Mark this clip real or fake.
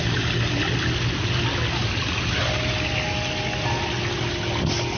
real